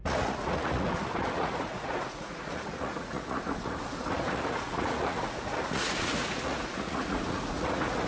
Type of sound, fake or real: fake